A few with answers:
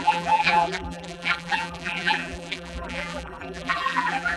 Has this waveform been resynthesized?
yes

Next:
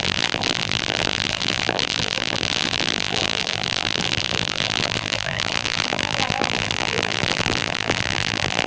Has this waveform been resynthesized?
yes